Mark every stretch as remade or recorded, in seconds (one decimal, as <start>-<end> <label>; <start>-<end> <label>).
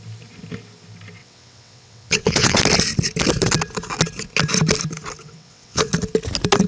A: 0.0-1.2 recorded; 1.2-2.6 remade; 2.6-5.2 recorded; 5.2-5.9 remade; 5.9-6.7 recorded